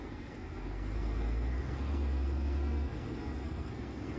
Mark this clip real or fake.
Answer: fake